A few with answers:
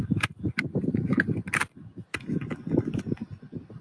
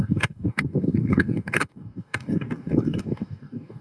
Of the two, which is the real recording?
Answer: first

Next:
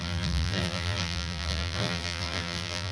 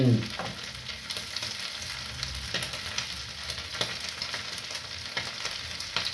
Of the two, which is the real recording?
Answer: second